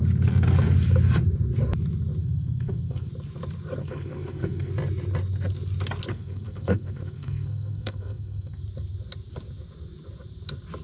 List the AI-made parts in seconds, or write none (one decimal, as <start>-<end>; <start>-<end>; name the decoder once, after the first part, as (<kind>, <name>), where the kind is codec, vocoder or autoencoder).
2.2-3.1 (codec, SNAC); 3.8-4.7; 6.1-8.6